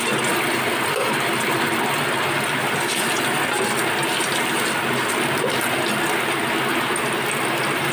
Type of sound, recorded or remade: recorded